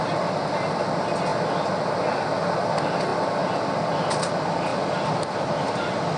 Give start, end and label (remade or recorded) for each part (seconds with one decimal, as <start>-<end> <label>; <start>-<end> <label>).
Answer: 0.0-4.7 recorded; 4.7-6.2 remade